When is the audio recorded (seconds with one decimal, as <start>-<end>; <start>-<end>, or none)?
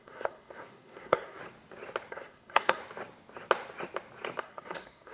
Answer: 1.4-2.1; 2.8-4.4